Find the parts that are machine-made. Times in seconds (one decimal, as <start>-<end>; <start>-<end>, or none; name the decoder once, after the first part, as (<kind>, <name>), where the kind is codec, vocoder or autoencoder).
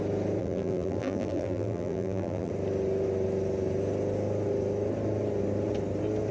0.4-2.5 (vocoder, BigVGAN v2)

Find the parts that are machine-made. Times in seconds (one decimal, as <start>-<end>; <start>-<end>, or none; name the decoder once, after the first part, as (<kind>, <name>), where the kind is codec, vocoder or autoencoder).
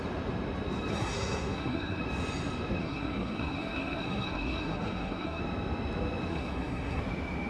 0.9-2.0 (codec, SNAC); 2.8-5.4; 6.3-7.0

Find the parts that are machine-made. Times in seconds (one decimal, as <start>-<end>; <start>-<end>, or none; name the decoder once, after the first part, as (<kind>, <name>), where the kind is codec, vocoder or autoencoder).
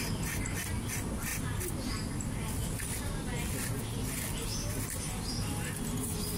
none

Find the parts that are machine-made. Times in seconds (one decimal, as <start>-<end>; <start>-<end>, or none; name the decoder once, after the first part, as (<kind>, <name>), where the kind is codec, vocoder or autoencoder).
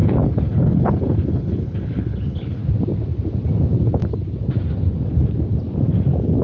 0.0-2.6 (codec, HILCodec)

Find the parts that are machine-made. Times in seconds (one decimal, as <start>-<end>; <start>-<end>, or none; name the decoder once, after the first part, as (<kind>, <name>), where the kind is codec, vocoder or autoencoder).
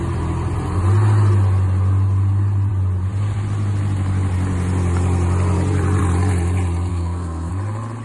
6.9-7.5 (codec, SNAC)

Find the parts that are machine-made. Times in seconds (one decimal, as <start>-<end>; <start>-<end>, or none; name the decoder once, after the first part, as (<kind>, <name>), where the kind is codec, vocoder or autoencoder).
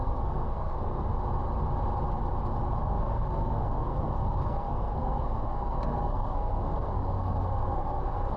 0.0-1.1 (codec, SNAC); 2.8-8.4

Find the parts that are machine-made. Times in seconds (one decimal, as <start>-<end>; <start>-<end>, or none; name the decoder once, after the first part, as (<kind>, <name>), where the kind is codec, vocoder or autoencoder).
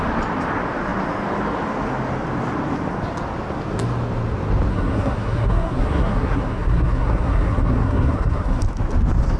4.7-8.6 (codec, SNAC)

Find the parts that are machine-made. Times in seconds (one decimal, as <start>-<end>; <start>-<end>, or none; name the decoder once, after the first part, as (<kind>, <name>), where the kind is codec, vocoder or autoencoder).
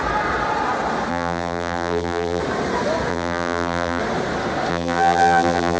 1.1-2.4 (vocoder, BigVGAN v2); 3.1-4.0; 4.7-5.8